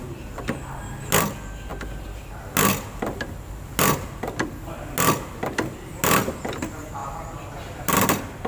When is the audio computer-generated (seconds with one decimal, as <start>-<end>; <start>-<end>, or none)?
none